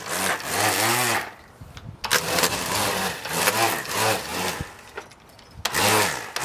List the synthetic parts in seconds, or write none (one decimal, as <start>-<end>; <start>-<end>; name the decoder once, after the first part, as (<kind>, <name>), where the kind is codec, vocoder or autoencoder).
none

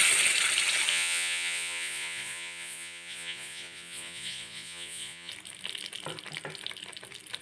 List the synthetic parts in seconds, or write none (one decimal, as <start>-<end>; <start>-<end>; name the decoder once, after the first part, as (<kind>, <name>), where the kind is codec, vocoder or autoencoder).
0.9-5.3 (vocoder, Vocos)

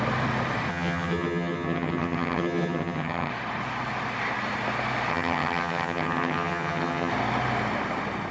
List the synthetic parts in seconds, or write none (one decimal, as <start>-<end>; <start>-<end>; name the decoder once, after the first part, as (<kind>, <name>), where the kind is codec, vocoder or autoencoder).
0.7-3.3 (vocoder, HiFi-GAN); 5.1-7.1

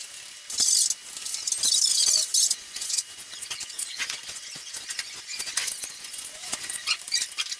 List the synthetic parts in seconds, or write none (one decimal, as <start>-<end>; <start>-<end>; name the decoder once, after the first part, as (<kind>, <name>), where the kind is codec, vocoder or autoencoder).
2.4-7.0 (vocoder, Vocos)

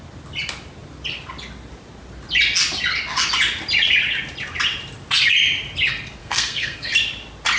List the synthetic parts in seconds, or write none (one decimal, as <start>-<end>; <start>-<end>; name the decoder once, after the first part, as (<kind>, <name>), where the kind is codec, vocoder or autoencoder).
6.2-6.9 (codec, SNAC)

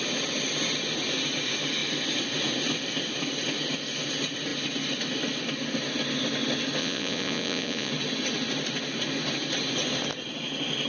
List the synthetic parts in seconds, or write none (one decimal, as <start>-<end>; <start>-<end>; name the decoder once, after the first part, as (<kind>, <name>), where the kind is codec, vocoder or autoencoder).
6.8-7.9 (vocoder, Vocos)

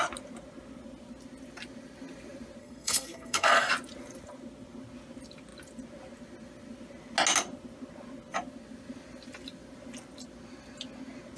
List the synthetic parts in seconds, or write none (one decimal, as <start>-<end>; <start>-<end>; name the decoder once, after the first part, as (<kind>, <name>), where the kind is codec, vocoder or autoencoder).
2.6-3.7 (codec, SNAC)